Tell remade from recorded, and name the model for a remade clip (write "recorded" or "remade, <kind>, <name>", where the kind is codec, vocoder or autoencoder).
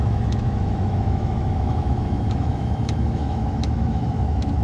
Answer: remade, autoencoder, DAC-VAE